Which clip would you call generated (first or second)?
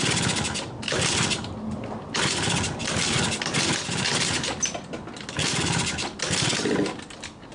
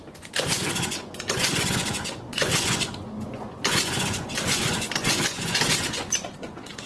second